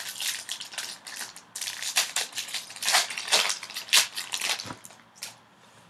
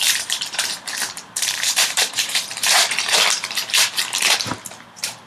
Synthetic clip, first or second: second